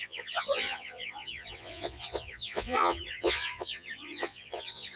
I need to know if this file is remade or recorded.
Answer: remade